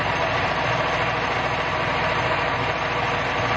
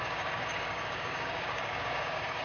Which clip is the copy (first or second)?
second